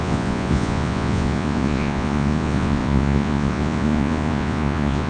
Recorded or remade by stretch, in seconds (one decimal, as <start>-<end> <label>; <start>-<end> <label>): 0.0-5.1 remade